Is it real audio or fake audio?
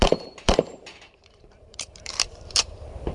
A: fake